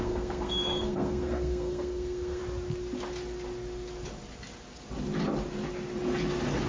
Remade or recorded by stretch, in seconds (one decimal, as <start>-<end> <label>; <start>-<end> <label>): 0.0-2.4 remade; 2.4-6.7 recorded